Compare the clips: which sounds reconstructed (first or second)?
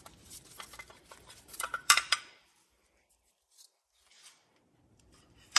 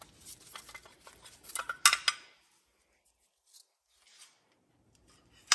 first